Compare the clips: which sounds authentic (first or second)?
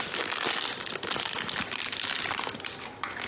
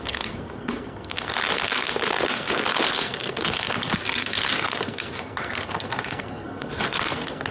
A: first